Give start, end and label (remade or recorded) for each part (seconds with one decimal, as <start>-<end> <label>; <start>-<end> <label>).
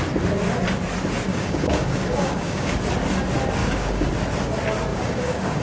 0.0-1.3 recorded; 1.3-2.7 remade; 2.7-3.6 recorded; 3.6-4.1 remade; 4.1-4.9 recorded; 4.9-5.6 remade